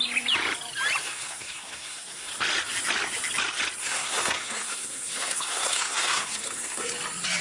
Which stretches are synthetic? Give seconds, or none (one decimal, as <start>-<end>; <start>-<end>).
1.0-2.3; 3.8-6.9